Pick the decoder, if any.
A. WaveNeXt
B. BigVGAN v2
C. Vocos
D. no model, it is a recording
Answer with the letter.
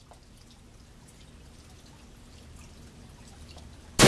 D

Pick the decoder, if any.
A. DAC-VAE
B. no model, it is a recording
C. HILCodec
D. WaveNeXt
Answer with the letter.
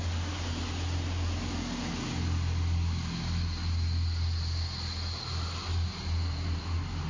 B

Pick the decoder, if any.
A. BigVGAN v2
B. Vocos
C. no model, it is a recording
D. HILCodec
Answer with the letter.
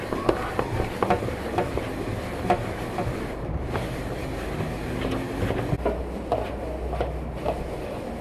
C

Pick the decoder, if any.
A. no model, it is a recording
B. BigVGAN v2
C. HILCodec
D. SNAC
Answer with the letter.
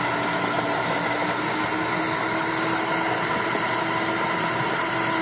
A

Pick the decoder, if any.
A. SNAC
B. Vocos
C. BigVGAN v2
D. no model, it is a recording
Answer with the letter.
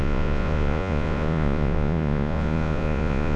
B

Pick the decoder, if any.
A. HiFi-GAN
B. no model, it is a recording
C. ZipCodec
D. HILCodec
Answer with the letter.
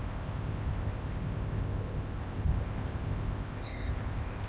C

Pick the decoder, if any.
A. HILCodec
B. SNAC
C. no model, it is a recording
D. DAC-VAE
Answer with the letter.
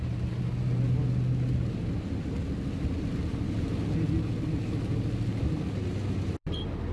C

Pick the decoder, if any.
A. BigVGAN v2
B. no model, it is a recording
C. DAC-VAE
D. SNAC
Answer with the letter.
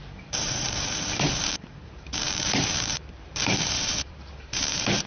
A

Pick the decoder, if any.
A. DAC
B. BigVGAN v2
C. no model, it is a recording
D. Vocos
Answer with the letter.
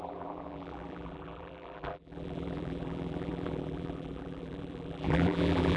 B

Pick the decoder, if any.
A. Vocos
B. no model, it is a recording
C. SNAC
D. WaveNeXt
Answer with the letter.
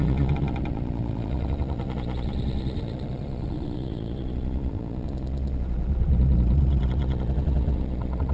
A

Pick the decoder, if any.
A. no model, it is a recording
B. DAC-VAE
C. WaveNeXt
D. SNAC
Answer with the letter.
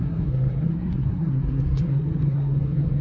D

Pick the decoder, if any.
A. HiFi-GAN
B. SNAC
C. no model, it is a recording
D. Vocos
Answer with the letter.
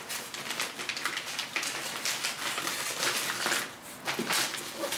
C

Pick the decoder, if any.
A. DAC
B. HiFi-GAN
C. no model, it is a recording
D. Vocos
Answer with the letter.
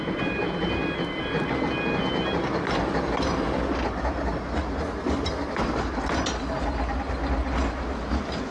C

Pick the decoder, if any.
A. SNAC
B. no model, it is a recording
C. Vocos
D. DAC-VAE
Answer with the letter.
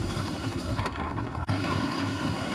A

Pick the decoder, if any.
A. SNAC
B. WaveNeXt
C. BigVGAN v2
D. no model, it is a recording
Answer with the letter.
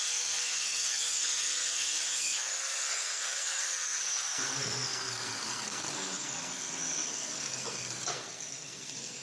A